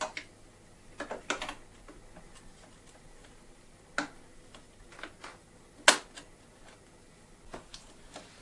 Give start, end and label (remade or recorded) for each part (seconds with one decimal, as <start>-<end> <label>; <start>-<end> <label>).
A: 0.0-8.4 recorded